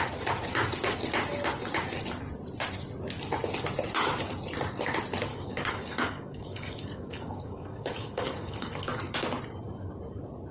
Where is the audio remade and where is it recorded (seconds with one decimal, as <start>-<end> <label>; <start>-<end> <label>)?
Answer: 0.0-5.3 recorded; 5.3-9.0 remade; 9.0-10.5 recorded